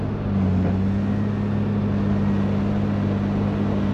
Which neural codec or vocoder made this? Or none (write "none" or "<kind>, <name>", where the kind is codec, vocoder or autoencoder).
none